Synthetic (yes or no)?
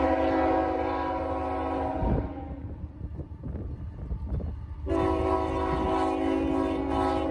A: no